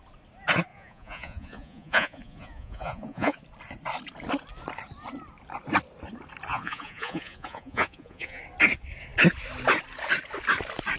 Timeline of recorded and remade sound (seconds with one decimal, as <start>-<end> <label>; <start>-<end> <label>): 0.0-0.7 recorded; 0.7-3.4 remade; 3.4-6.5 recorded; 6.5-8.4 remade; 8.4-11.0 recorded